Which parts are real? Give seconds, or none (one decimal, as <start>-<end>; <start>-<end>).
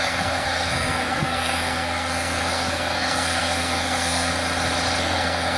4.3-5.0